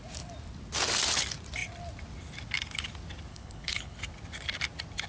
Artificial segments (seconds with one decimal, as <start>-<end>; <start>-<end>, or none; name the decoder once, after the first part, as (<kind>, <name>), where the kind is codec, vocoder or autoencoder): 3.3-4.0 (codec, HILCodec)